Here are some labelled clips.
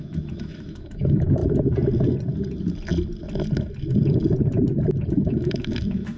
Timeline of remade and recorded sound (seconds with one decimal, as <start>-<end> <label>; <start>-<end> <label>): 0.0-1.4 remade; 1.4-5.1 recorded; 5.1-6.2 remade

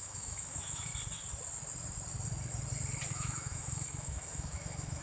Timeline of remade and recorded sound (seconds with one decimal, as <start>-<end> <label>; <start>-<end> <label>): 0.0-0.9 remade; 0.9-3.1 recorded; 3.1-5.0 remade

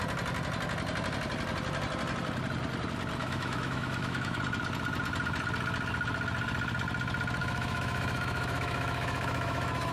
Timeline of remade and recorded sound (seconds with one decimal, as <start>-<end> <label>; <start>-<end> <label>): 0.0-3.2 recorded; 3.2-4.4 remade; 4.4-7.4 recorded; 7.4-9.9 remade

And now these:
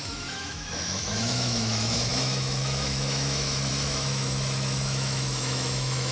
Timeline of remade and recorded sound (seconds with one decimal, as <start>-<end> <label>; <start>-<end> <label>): 0.0-6.1 remade

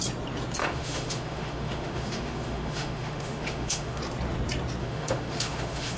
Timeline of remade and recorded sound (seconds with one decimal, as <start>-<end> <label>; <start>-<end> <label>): 0.0-0.6 recorded; 0.6-4.0 remade; 4.0-4.8 recorded; 4.8-6.0 remade